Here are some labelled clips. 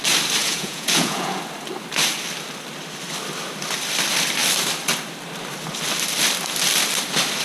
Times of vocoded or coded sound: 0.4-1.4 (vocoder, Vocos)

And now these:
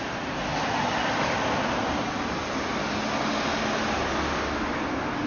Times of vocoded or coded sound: none

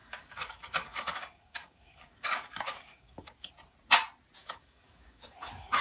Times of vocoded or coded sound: 0.0-3.5 (codec, DAC); 4.4-5.8